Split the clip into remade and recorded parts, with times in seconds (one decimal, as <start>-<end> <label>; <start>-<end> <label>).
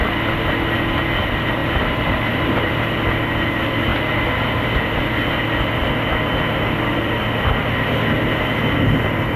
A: 0.0-1.6 recorded; 1.6-2.2 remade; 2.2-9.4 recorded